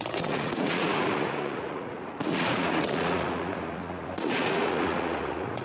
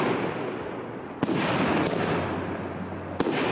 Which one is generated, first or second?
first